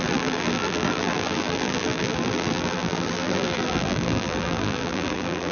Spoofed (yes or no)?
yes